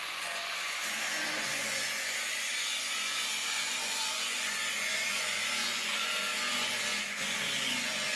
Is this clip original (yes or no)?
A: no